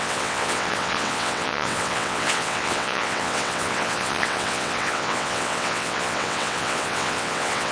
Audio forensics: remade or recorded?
remade